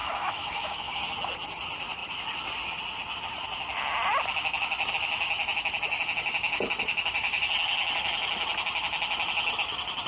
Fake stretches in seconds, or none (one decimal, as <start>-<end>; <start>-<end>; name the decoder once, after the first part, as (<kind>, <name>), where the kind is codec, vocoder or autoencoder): 0.0-1.0 (autoencoder, DAC-VAE)